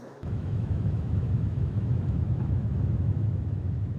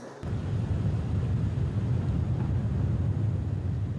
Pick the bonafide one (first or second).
second